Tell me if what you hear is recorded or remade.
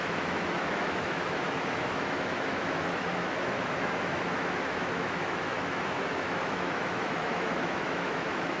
remade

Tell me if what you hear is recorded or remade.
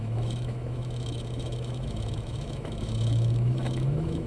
remade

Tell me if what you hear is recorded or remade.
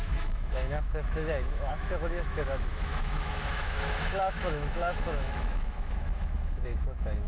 remade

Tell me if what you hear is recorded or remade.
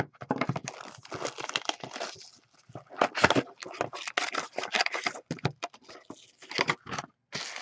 recorded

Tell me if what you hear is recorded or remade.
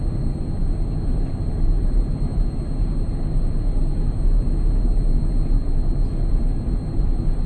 recorded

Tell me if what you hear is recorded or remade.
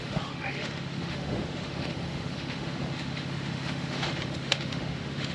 remade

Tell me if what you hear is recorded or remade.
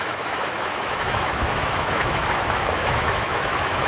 remade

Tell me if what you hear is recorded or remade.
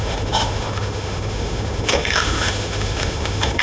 remade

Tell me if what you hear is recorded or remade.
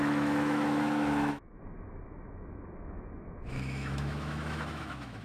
remade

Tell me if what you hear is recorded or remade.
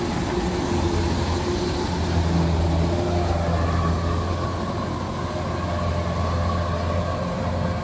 recorded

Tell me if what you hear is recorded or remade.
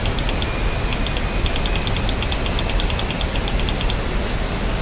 recorded